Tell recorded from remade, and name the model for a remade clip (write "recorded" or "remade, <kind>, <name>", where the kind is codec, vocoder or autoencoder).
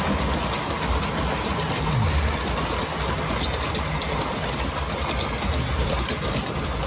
recorded